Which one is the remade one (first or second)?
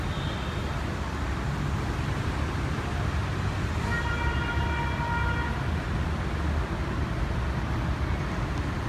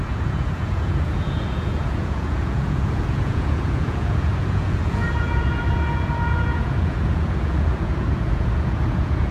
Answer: second